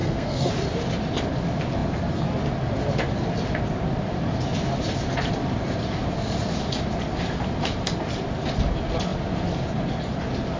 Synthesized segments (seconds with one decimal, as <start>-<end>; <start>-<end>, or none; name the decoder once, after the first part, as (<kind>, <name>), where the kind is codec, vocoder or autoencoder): 0.0-0.5 (codec, SNAC)